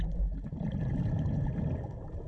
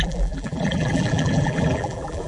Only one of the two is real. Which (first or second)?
first